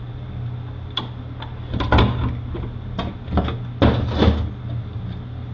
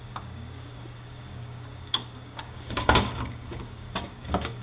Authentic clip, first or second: first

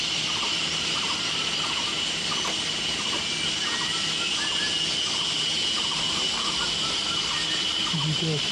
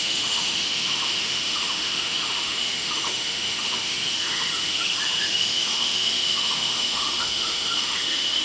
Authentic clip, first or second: first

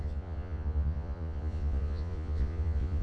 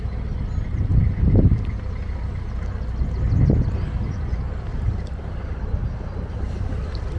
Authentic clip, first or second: second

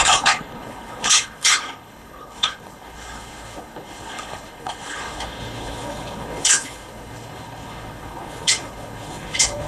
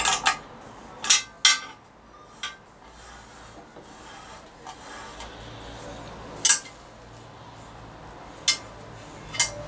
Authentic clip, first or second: second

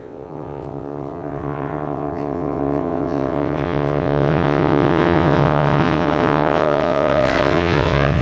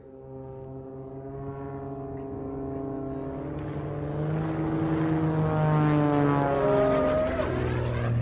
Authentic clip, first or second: second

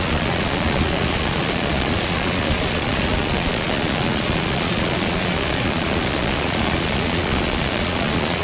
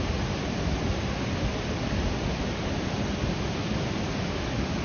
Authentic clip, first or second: second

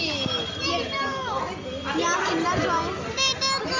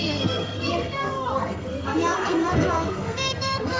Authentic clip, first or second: first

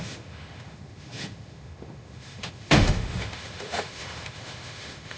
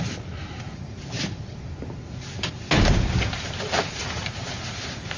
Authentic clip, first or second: second